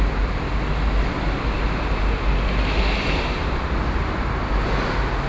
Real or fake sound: real